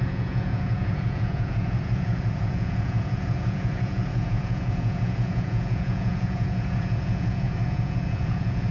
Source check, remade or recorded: remade